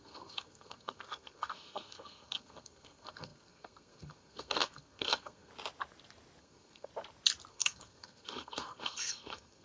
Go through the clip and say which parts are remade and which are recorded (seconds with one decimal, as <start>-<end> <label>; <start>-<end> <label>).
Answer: 0.0-5.5 remade; 5.5-6.4 recorded; 6.4-6.9 remade; 6.9-7.5 recorded; 7.5-9.6 remade